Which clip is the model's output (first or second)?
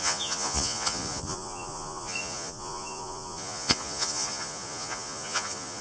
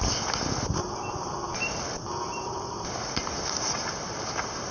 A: first